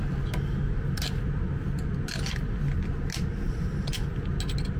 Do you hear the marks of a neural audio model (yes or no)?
no